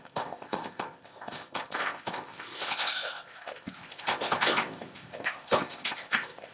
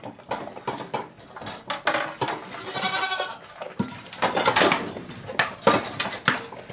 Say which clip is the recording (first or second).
second